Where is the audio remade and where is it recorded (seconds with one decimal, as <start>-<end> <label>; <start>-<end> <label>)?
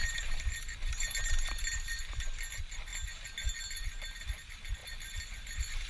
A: 0.0-2.2 remade; 2.2-4.8 recorded; 4.8-5.9 remade